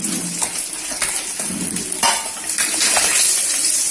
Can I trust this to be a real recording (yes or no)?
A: yes